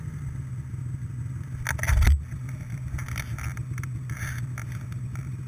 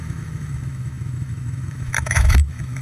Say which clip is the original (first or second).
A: first